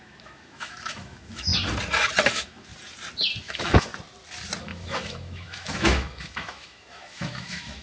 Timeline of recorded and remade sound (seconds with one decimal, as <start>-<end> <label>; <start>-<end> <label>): 0.0-1.5 remade; 1.5-2.3 recorded; 2.3-2.7 remade; 2.7-3.4 recorded; 3.4-3.9 remade; 3.9-4.6 recorded; 4.6-7.8 remade